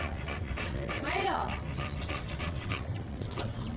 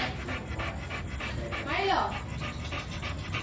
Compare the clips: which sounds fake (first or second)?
first